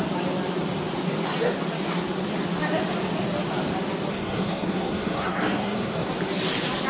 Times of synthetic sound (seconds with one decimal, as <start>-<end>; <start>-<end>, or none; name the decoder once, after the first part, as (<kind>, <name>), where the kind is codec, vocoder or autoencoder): 4.1-6.1 (codec, SNAC)